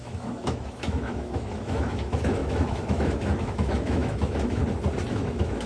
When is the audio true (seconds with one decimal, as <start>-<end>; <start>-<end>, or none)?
4.6-5.1

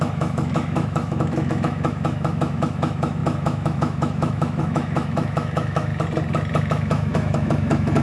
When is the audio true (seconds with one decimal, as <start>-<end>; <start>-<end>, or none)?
5.9-6.6